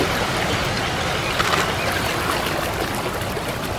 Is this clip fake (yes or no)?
no